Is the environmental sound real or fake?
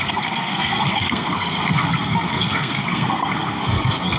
fake